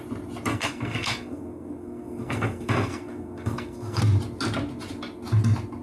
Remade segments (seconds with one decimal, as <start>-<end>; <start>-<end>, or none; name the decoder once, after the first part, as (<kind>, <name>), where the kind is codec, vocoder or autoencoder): 0.5-4.0 (codec, SNAC)